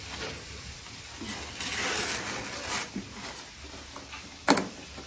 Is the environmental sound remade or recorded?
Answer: recorded